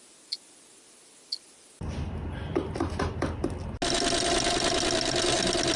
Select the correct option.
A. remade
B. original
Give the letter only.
B